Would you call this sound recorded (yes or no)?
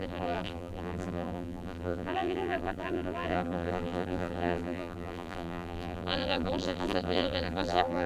no